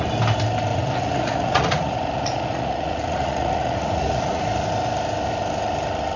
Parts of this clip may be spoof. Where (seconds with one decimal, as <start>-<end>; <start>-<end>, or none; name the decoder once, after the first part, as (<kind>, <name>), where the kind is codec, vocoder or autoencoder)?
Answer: 0.7-4.4 (vocoder, Vocos)